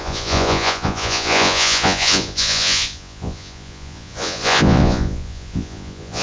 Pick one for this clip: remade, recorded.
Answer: remade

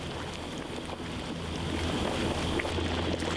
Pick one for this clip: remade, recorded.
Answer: recorded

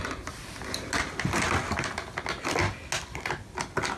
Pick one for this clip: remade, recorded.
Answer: recorded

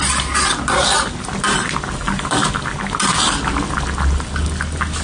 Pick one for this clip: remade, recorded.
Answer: recorded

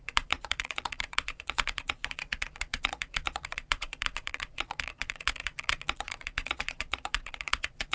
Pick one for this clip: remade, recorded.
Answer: remade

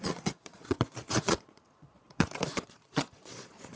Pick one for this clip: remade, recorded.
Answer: remade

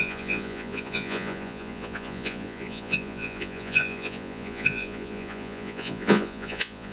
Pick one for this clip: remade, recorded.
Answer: remade